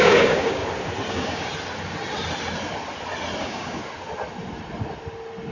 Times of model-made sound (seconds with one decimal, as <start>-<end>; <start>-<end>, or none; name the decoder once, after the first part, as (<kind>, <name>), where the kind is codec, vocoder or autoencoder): 0.0-0.6 (codec, DAC); 1.1-1.5; 3.4-3.8